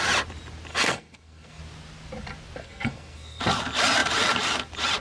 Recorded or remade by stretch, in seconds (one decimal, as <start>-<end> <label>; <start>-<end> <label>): 0.0-0.7 recorded; 0.7-1.6 remade; 1.6-2.6 recorded; 2.6-3.4 remade; 3.4-5.0 recorded